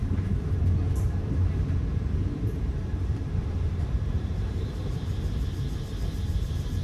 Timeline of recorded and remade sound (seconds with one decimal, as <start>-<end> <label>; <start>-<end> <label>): 0.0-0.6 remade; 0.6-1.9 recorded; 1.9-5.1 remade; 5.1-6.8 recorded